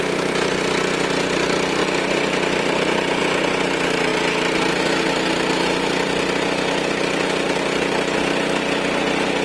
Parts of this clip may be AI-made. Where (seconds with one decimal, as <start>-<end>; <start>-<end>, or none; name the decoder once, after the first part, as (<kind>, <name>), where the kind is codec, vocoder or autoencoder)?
1.8-3.2 (vocoder, BigVGAN v2)